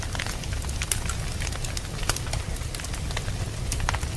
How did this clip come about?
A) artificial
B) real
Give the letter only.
B